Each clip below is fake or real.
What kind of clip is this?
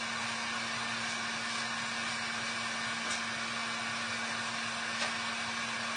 real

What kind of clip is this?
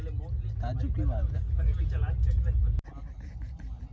real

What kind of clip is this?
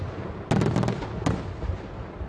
real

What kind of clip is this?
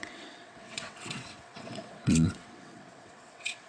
fake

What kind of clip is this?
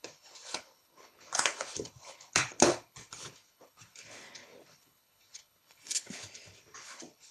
fake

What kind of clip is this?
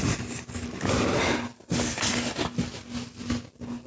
real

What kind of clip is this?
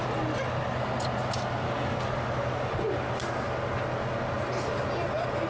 real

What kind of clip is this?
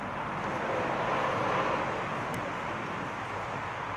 real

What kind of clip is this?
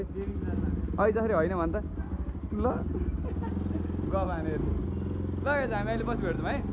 real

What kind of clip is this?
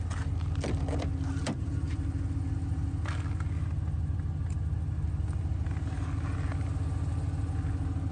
real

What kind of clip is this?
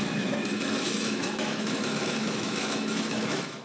fake